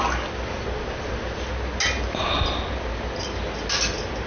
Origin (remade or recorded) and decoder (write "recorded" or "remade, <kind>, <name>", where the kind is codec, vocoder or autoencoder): recorded